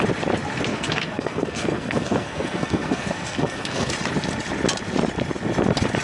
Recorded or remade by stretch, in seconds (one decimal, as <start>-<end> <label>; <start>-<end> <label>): 0.0-0.7 recorded; 0.7-3.9 remade; 3.9-6.0 recorded